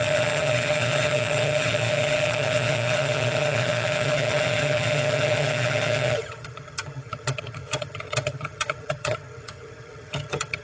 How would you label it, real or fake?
fake